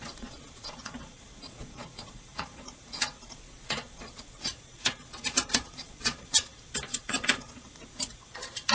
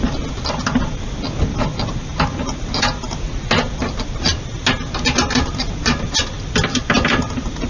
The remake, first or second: first